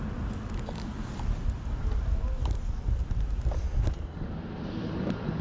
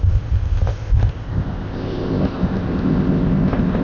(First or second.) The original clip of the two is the first